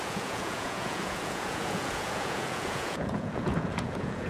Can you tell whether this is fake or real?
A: fake